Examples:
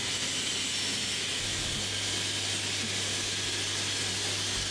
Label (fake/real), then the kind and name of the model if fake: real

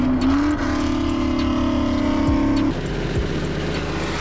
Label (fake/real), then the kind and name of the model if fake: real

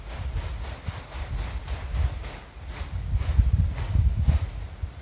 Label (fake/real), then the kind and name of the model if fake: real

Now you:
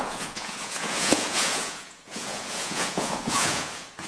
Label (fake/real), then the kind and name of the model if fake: fake, vocoder, Vocos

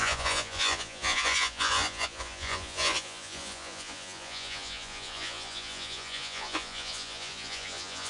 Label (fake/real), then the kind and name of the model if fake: fake, vocoder, Vocos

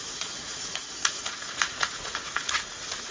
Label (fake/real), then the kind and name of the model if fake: fake, vocoder, Vocos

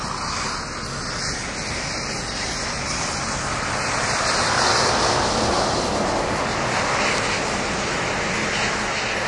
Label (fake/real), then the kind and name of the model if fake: real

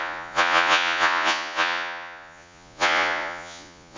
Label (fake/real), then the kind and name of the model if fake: fake, vocoder, Vocos